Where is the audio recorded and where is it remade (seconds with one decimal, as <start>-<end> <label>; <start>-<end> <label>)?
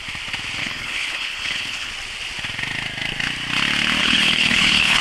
0.0-0.6 recorded; 0.6-1.9 remade; 1.9-4.0 recorded; 4.0-5.0 remade